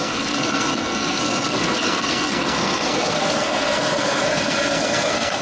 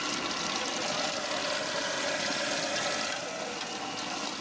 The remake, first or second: first